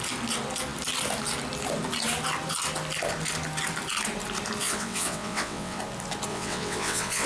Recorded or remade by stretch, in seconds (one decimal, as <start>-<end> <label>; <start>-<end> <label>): 0.0-4.6 recorded; 4.6-5.8 remade; 5.8-6.3 recorded; 6.3-7.3 remade